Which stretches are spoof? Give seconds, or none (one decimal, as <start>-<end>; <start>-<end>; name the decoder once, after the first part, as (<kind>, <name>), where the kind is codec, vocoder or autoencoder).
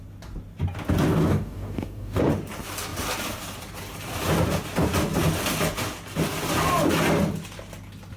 1.2-2.2 (codec, DAC)